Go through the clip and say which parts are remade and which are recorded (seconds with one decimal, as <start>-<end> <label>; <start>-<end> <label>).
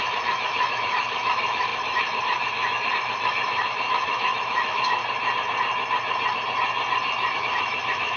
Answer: 0.0-5.0 remade; 5.0-7.4 recorded; 7.4-8.2 remade